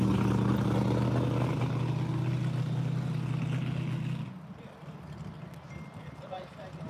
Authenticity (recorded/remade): recorded